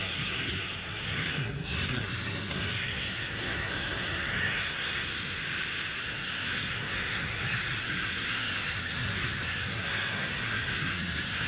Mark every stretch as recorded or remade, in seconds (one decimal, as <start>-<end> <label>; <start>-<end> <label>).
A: 0.0-5.4 remade; 5.4-6.0 recorded; 6.0-11.5 remade